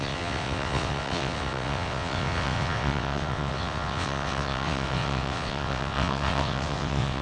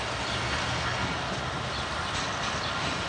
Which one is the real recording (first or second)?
second